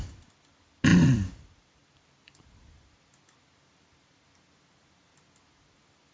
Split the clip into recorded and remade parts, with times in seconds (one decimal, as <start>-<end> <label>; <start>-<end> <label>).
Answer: 0.0-0.9 recorded; 0.9-2.4 remade; 2.4-6.1 recorded